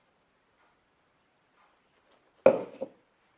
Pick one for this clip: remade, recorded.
recorded